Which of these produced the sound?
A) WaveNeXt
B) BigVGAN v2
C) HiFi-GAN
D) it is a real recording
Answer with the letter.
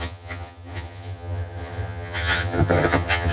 C